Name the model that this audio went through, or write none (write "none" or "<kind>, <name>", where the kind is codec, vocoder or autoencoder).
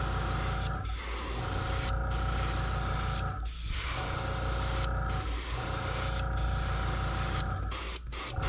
none